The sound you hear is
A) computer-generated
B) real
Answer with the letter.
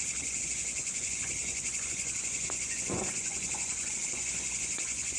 A